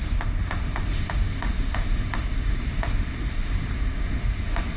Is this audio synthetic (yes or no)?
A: yes